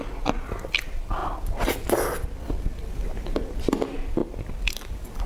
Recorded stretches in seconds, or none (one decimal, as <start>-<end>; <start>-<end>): 0.0-5.3